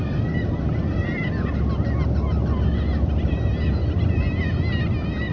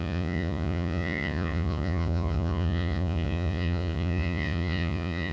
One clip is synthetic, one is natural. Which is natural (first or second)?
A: first